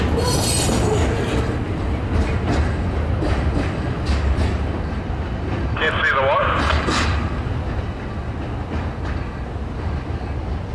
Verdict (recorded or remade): recorded